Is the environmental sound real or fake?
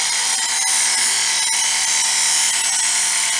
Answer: real